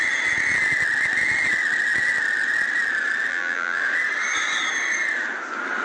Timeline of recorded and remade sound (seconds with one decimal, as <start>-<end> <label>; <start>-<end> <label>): 0.0-3.3 recorded; 3.3-3.8 remade; 3.8-5.8 recorded